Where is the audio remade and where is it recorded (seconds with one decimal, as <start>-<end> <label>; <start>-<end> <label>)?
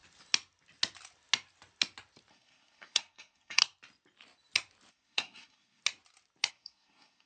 0.0-2.3 recorded; 2.3-3.6 remade; 3.6-4.9 recorded; 4.9-5.8 remade; 5.8-6.5 recorded; 6.5-7.3 remade